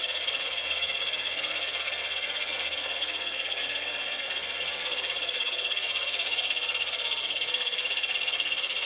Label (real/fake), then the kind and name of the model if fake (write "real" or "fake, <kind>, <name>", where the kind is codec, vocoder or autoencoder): fake, codec, SNAC